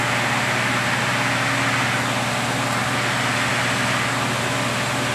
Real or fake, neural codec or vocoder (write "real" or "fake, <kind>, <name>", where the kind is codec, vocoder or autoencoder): real